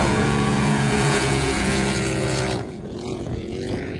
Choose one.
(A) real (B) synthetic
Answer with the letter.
B